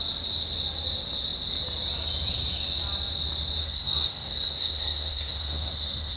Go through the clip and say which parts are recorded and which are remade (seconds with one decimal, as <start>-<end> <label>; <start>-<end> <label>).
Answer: 0.0-3.6 recorded; 3.6-6.2 remade